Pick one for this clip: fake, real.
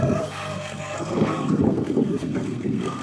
fake